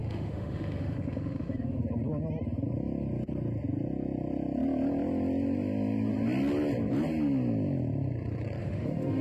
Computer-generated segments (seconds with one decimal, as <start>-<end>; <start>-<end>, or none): 0.0-1.8; 8.6-9.2